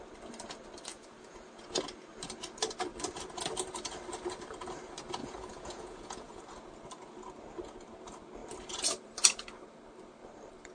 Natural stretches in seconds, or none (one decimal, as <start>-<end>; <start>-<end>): 0.0-0.9; 1.5-5.2; 6.4-10.7